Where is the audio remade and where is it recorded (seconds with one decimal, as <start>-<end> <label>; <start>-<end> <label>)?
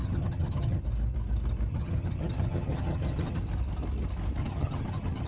0.0-0.8 remade; 0.8-1.7 recorded; 1.7-3.4 remade; 3.4-4.4 recorded; 4.4-5.3 remade